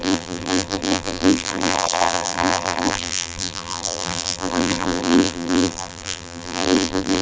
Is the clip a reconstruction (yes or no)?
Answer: yes